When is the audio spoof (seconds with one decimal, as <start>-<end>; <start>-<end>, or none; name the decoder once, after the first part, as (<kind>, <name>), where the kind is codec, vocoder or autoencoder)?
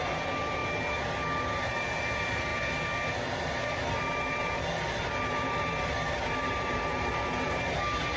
0.0-0.6 (vocoder, BigVGAN v2); 1.4-2.5; 4.0-8.2